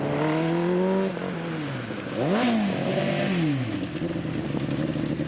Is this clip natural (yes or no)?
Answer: yes